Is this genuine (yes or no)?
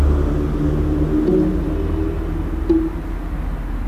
yes